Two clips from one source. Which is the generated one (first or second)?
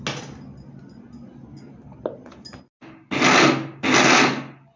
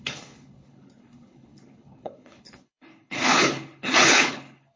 second